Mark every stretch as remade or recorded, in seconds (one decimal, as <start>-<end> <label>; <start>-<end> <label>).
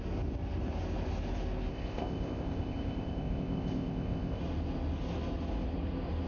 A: 0.0-1.7 recorded; 1.7-4.4 remade; 4.4-6.3 recorded